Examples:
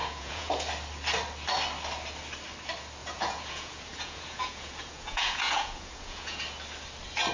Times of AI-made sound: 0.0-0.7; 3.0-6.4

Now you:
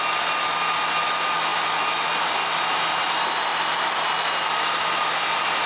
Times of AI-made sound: none

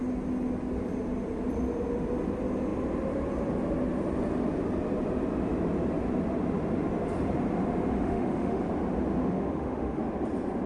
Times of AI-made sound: 7.9-8.6; 9.2-10.0

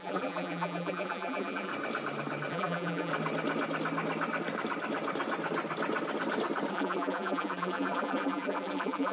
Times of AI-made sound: 0.0-1.7; 2.5-3.1; 6.7-9.1

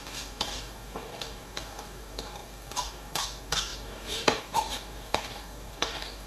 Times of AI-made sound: 0.0-6.3

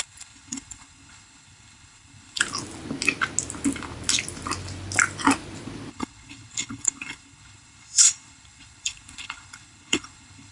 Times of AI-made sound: 0.0-2.4; 5.9-10.5

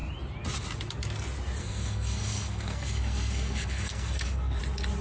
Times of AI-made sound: 1.6-4.6